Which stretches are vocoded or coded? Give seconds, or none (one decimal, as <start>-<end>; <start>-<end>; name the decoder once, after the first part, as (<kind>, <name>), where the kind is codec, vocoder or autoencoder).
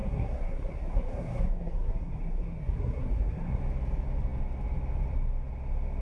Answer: 0.0-3.6 (codec, SNAC)